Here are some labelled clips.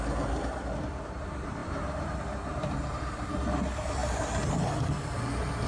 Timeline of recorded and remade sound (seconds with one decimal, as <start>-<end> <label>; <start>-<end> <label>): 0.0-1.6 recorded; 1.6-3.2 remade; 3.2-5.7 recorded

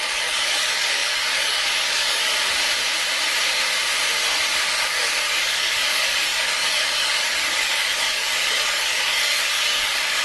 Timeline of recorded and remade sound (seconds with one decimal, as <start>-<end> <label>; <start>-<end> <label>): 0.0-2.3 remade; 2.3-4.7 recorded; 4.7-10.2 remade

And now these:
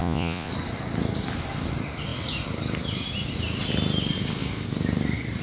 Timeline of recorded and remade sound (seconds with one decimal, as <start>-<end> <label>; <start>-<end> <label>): 0.0-0.5 remade; 0.5-5.4 recorded

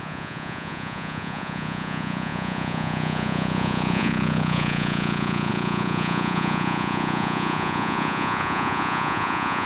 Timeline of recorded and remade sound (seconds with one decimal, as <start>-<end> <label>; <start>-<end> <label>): 0.0-9.7 remade

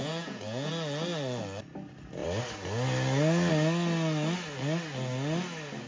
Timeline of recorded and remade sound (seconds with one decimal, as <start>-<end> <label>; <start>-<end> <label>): 0.0-0.7 remade; 0.7-5.9 recorded

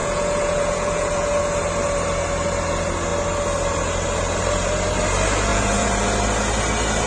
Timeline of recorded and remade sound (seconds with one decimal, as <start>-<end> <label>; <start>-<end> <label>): 0.0-1.4 remade; 1.4-5.5 recorded; 5.5-6.0 remade; 6.0-7.1 recorded

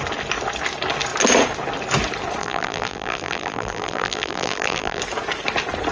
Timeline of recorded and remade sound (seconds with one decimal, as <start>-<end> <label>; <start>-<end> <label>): 0.0-2.4 recorded; 2.4-5.0 remade; 5.0-5.9 recorded

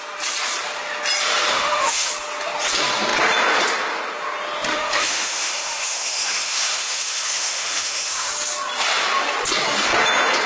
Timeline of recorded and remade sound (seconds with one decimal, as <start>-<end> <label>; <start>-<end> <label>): 0.0-1.5 recorded; 1.5-2.1 remade; 2.1-4.7 recorded; 4.7-8.3 remade; 8.3-10.5 recorded